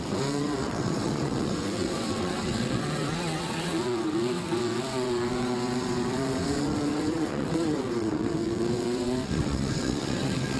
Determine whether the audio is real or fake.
fake